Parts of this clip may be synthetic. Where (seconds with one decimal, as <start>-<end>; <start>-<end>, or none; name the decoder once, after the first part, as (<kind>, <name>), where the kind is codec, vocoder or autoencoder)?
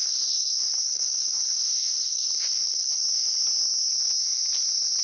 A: 0.0-3.0 (codec, SNAC)